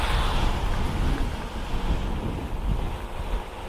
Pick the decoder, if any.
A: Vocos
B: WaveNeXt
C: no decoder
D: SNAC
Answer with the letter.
C